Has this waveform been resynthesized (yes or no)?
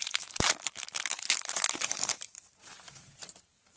yes